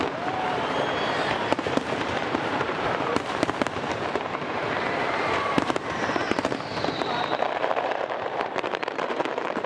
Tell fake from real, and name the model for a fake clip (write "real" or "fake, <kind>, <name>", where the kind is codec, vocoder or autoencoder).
fake, vocoder, BigVGAN v2